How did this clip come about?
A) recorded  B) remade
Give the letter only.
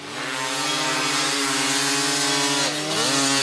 A